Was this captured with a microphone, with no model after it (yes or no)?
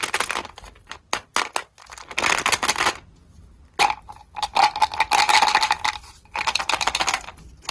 yes